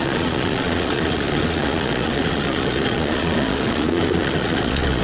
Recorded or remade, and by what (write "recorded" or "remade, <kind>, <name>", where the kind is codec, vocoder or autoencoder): remade, vocoder, Vocos